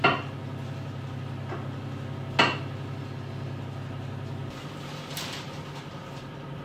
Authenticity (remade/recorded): recorded